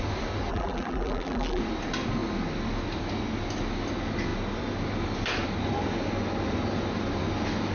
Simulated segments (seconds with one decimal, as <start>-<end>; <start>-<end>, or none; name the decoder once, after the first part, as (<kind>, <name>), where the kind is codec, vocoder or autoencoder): 0.5-1.6 (vocoder, BigVGAN v2)